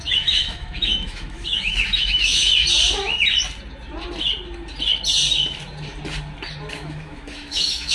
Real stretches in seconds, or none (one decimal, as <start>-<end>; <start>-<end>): 2.6-6.7